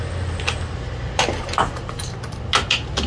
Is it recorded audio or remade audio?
recorded